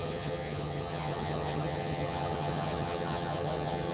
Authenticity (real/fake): fake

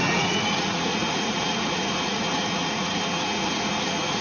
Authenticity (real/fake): fake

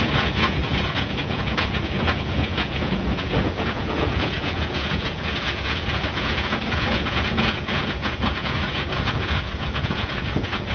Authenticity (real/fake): fake